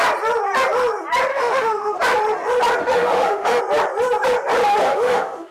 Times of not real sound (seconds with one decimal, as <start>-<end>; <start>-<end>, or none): 1.3-2.0; 2.8-3.6; 4.9-5.5